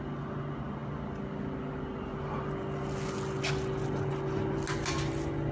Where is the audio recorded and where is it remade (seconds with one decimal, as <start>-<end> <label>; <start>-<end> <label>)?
0.0-5.5 recorded